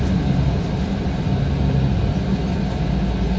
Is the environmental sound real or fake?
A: real